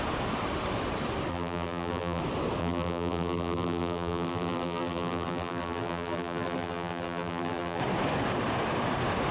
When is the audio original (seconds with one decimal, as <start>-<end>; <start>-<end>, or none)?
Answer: 0.0-1.3; 2.2-2.6; 7.8-9.3